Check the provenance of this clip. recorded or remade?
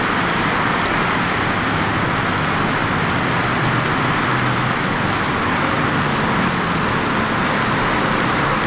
recorded